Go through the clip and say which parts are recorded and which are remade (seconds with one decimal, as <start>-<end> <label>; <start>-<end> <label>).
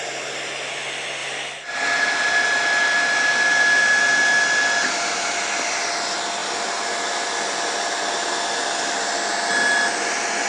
0.0-10.5 recorded